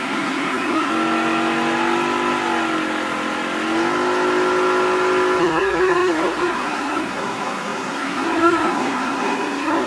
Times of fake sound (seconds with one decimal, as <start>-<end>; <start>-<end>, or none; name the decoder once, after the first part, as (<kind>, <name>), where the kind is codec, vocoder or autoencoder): 0.0-0.9 (codec, SNAC); 5.4-9.9